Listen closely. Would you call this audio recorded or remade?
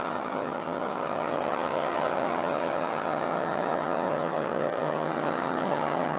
remade